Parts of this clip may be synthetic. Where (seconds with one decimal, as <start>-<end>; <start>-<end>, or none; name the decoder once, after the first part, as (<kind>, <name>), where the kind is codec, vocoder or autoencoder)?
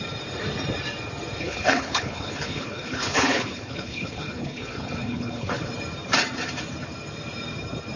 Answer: 1.4-5.7 (codec, HILCodec)